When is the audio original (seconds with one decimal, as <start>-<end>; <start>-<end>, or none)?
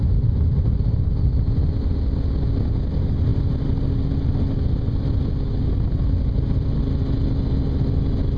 0.0-8.4